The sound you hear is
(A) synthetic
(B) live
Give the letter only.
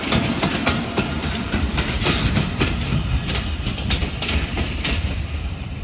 A